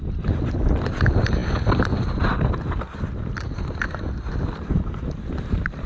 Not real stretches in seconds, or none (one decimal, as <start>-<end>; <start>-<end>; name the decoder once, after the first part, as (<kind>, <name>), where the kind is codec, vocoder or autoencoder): none